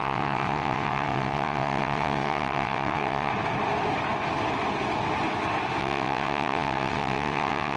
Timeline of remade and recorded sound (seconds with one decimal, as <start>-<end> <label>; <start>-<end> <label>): 0.0-3.3 remade; 3.3-5.8 recorded; 5.8-7.8 remade

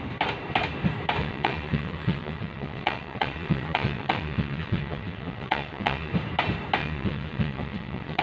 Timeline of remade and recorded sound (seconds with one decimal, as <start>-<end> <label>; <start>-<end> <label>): 0.0-1.2 recorded; 1.2-6.1 remade; 6.1-6.8 recorded; 6.8-8.2 remade

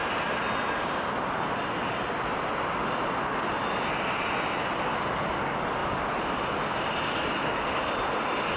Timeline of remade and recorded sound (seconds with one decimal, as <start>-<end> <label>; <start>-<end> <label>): 0.0-8.6 recorded

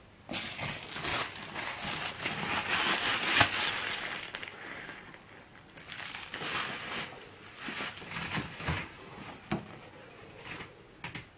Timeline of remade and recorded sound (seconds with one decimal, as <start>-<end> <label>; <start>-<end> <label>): 0.0-11.4 recorded

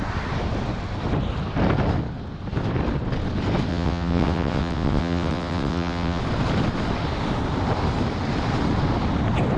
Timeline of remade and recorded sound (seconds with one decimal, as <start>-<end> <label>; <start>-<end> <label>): 0.0-3.7 recorded; 3.7-6.2 remade; 6.2-9.6 recorded